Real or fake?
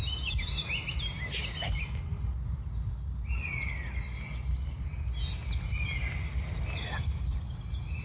real